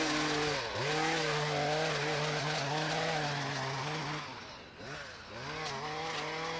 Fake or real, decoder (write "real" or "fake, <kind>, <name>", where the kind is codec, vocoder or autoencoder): real